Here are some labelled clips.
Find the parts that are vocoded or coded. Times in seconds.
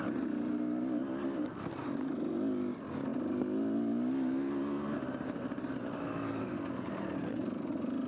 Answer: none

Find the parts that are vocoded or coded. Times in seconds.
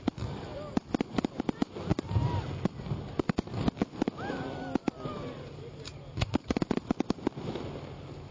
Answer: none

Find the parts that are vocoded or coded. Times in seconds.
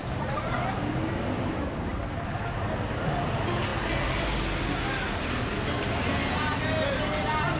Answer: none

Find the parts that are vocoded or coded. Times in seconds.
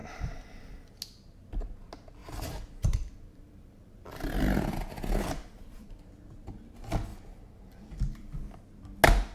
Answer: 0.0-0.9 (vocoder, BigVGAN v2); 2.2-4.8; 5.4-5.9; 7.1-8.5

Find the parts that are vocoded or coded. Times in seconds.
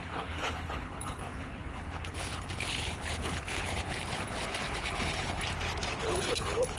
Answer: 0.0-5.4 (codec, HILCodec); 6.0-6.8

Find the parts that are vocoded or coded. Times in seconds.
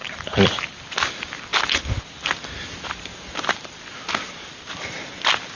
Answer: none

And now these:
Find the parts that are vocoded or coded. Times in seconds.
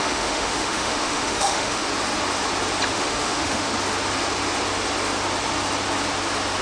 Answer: 0.0-1.9 (autoencoder, DAC-VAE); 2.9-3.7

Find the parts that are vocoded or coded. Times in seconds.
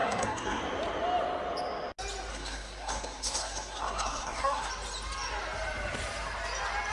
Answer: 0.0-0.6 (codec, SNAC); 2.3-4.7